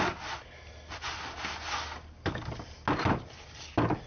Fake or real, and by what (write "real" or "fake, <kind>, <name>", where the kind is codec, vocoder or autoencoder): real